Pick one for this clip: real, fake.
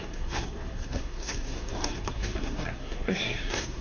fake